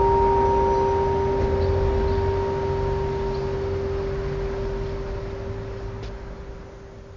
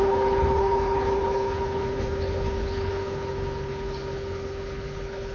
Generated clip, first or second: second